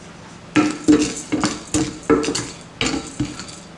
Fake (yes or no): no